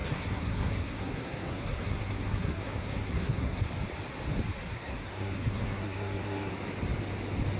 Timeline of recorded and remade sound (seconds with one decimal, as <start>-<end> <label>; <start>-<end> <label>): 0.0-3.7 remade; 3.7-4.7 recorded; 4.7-6.5 remade; 6.5-7.6 recorded